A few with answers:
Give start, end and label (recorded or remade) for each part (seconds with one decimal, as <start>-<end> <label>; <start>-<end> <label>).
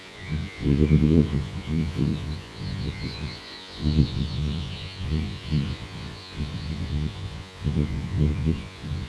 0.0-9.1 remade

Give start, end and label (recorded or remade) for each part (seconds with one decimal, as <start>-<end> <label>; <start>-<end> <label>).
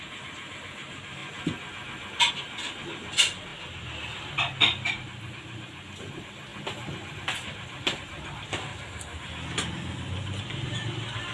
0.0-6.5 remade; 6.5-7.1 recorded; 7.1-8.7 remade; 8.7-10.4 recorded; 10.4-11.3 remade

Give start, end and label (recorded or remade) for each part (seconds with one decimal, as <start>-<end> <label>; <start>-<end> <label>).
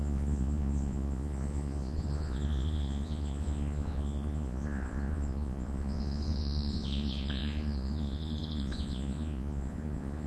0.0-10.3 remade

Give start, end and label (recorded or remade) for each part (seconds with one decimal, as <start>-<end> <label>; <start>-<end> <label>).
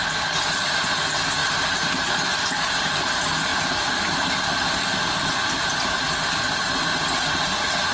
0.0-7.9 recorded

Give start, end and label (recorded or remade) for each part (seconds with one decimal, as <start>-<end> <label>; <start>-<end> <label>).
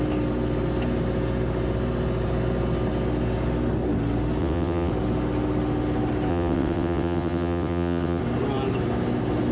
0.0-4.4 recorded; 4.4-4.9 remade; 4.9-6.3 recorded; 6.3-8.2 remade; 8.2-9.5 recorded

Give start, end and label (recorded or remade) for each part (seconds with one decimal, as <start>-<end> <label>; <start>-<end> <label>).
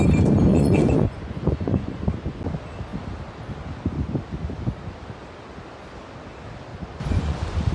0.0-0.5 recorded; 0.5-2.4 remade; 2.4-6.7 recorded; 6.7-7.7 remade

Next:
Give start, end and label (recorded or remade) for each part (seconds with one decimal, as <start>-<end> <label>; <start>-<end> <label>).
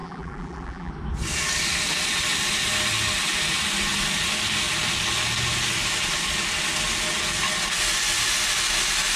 0.0-0.9 remade; 0.9-9.2 recorded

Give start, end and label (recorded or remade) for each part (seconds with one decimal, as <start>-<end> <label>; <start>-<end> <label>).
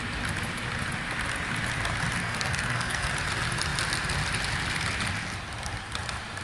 0.0-2.2 recorded; 2.2-3.1 remade; 3.1-6.4 recorded